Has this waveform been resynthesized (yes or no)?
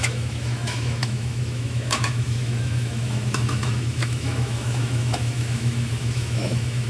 yes